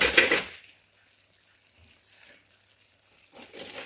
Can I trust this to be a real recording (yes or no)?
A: yes